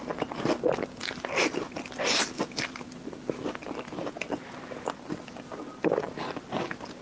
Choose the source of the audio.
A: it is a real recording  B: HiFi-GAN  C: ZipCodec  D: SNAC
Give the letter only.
A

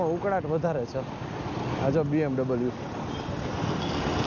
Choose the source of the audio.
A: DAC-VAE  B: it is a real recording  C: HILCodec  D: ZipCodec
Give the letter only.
B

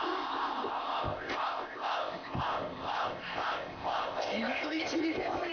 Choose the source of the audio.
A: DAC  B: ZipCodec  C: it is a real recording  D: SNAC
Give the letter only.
B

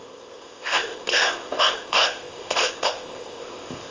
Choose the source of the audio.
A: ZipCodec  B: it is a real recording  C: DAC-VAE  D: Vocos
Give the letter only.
A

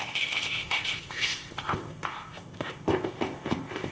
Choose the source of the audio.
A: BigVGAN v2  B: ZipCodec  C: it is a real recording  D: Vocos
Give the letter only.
B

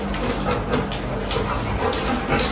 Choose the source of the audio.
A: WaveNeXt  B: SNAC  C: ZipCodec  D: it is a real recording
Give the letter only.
D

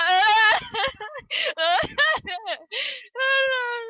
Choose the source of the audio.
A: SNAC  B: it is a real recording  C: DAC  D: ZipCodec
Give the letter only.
B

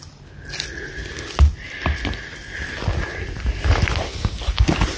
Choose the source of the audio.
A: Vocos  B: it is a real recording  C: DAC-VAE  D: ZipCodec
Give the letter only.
B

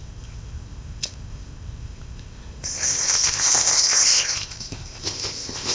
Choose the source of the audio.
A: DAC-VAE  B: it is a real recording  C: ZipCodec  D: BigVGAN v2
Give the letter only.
C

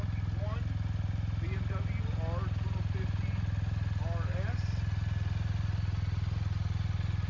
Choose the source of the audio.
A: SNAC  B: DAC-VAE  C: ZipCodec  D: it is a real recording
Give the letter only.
D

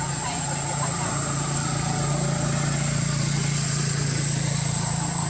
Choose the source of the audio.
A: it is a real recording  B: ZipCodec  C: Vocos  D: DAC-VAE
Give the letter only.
A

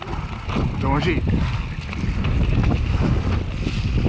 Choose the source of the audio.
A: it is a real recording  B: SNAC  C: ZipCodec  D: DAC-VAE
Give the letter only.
A